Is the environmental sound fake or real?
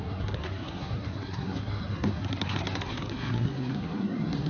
fake